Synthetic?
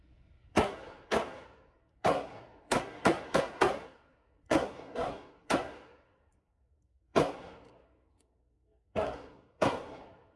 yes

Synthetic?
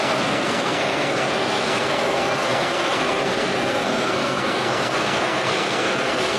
yes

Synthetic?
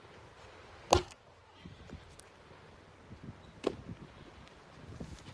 no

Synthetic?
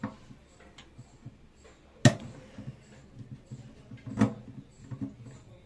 no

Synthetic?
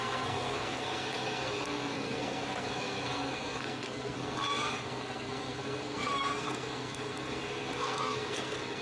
yes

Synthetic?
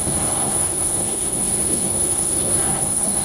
yes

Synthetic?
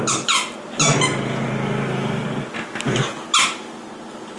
no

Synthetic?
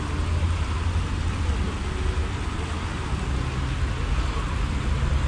no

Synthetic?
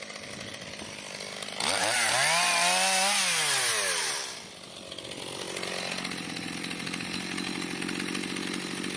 no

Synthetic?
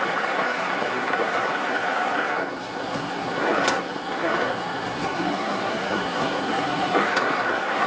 yes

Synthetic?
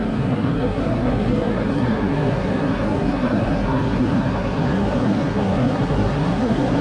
yes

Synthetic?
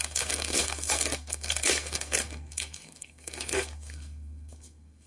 yes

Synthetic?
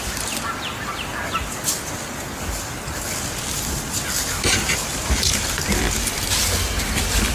no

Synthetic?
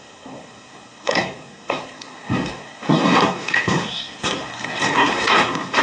yes